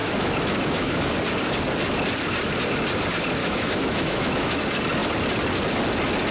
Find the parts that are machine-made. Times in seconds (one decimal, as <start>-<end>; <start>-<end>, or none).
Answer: 0.0-1.1; 3.4-4.6